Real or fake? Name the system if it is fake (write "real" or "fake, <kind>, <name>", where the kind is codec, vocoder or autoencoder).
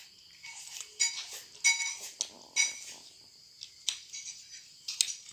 real